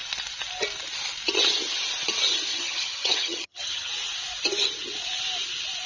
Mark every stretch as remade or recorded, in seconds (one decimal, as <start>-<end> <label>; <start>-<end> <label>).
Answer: 0.0-2.5 recorded; 2.5-3.9 remade; 3.9-5.9 recorded